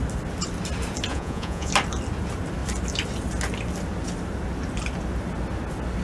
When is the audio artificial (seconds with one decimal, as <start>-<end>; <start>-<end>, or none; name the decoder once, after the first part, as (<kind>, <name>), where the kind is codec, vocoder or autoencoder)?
1.1-1.7 (vocoder, Vocos)